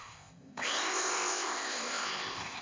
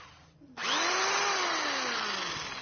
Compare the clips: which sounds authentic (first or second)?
second